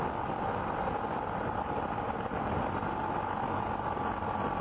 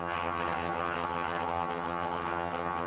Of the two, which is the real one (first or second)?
first